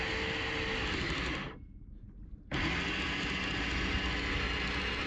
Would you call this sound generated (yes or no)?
no